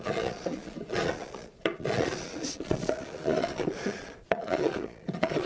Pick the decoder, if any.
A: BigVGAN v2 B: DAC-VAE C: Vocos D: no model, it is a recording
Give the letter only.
C